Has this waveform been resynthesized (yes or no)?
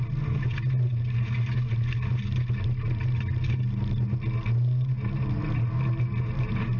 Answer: no